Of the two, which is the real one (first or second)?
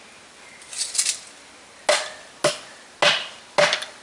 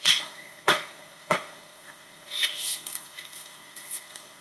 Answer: first